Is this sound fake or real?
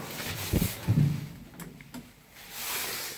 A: real